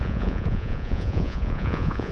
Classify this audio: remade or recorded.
remade